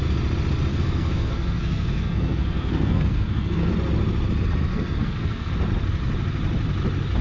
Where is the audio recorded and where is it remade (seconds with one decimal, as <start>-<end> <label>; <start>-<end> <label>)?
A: 0.0-0.7 recorded; 0.7-3.7 remade; 3.7-4.7 recorded; 4.7-5.5 remade; 5.5-7.2 recorded